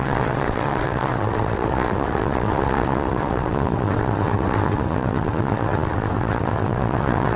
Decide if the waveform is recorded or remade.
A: remade